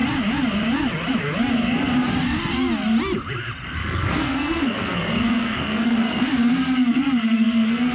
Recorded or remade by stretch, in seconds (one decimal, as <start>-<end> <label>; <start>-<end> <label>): 0.0-3.8 recorded; 3.8-6.3 remade; 6.3-7.2 recorded; 7.2-7.9 remade